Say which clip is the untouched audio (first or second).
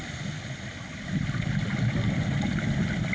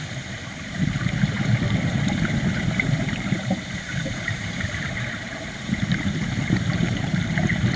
first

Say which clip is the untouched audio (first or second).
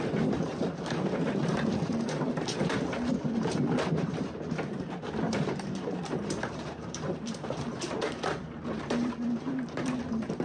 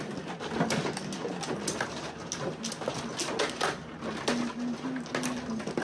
second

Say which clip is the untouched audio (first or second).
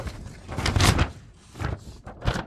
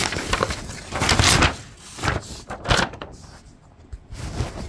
second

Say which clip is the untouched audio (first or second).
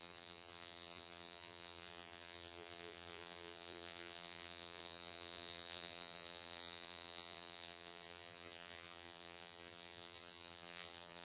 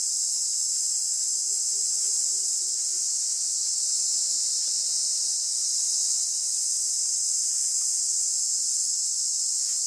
second